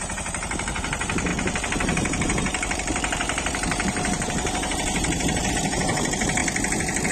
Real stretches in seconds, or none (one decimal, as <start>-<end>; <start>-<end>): 6.4-7.1